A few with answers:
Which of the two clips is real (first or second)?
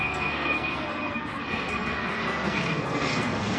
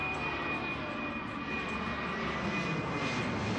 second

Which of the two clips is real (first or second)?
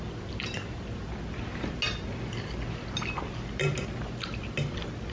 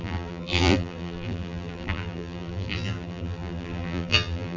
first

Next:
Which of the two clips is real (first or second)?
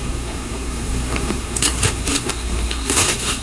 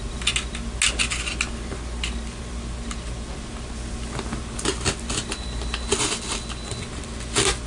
second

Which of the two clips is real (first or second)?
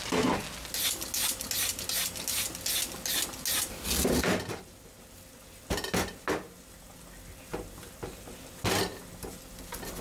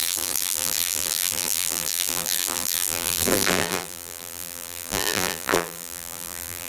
first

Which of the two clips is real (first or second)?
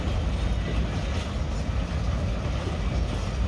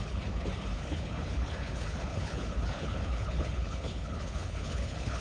first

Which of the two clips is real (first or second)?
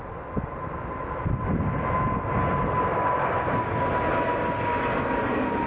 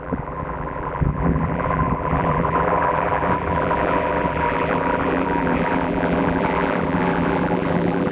first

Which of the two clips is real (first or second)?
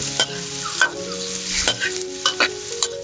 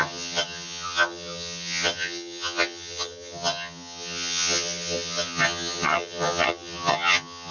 first